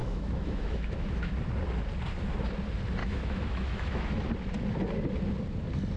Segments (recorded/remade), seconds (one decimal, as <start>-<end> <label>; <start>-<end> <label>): 0.0-1.3 remade; 1.3-3.0 recorded; 3.0-4.2 remade; 4.2-6.0 recorded